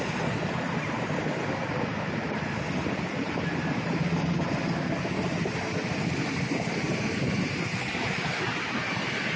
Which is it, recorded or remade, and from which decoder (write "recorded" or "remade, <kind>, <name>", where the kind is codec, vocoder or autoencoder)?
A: recorded